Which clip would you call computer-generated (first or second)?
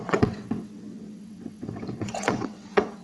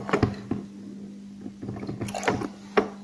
first